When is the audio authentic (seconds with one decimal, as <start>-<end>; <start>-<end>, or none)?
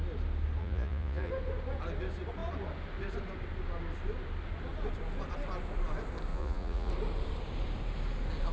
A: 0.0-0.6; 1.3-6.3; 6.9-8.5